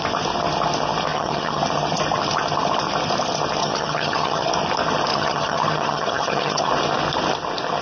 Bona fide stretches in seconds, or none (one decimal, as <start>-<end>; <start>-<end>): 0.0-1.1; 1.6-3.6; 4.5-5.1; 6.7-7.8